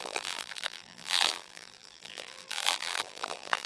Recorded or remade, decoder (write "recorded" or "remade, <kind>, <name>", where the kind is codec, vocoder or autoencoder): remade, vocoder, BigVGAN v2